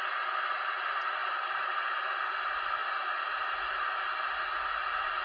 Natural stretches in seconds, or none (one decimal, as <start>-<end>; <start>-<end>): 0.0-5.2